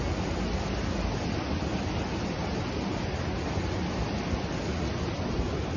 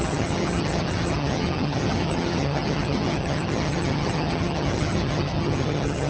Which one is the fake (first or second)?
second